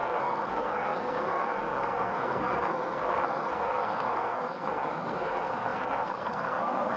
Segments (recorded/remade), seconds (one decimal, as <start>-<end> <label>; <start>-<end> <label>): 0.0-7.0 remade